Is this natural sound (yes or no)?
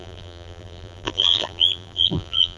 no